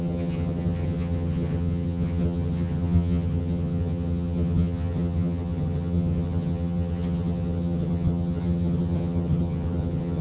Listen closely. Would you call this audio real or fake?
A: fake